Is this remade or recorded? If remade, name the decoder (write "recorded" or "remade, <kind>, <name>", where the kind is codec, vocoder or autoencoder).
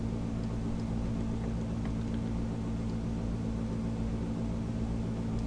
recorded